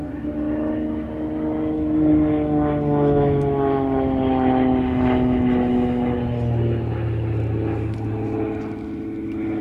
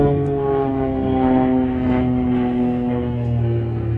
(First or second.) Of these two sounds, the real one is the first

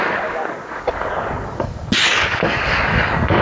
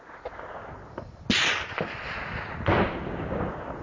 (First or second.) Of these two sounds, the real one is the second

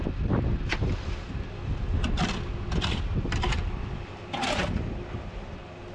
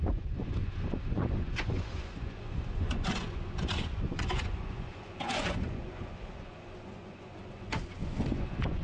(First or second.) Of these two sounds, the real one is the first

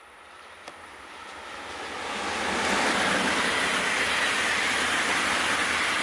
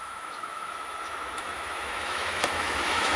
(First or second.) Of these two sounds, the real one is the first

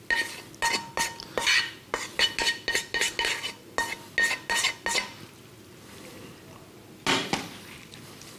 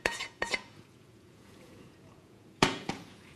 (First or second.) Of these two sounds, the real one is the first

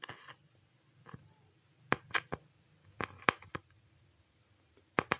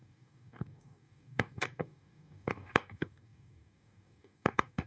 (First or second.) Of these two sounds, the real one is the first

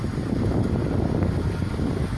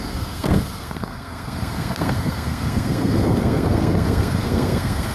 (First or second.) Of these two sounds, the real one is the first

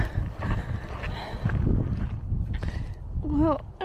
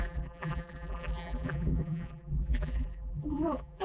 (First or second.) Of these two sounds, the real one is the first